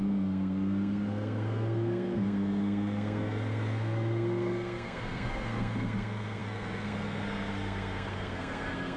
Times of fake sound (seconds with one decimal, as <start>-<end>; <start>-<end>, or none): 0.0-9.0